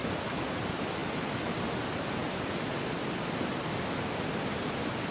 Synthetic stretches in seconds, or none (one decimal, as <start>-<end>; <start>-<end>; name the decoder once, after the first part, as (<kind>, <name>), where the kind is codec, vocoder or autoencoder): 0.0-0.6 (vocoder, Vocos)